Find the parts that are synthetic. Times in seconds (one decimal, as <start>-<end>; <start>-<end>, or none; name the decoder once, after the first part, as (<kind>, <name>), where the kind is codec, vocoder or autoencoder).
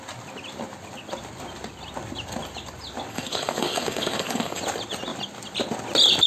3.1-4.6 (codec, SNAC)